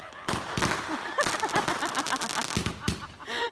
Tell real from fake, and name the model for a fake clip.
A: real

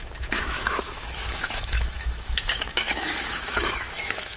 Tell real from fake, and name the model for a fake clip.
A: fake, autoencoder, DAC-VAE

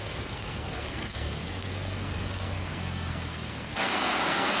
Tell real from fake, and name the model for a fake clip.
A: fake, codec, SNAC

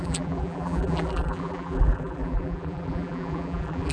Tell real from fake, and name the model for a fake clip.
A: fake, vocoder, BigVGAN v2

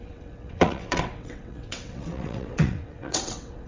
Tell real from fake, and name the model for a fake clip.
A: fake, vocoder, WaveNeXt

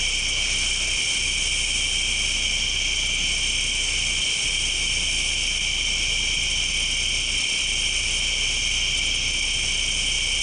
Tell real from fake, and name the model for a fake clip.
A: real